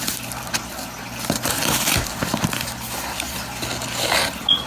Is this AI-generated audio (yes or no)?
no